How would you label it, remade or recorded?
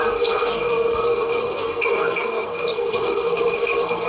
remade